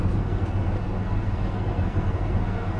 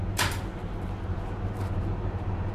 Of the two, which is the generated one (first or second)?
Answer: first